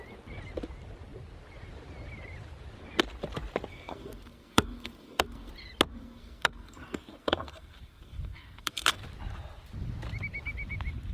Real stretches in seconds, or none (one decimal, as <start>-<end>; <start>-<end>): 0.0-3.7; 5.5-5.9; 9.0-11.1